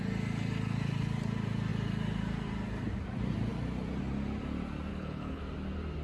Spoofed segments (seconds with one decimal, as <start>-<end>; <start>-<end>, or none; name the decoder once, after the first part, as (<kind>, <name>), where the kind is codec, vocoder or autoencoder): 4.9-5.4 (codec, HILCodec)